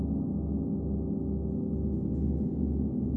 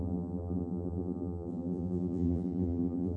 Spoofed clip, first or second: second